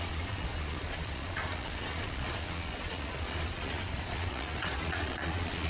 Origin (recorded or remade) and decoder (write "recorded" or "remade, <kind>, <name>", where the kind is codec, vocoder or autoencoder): remade, vocoder, Vocos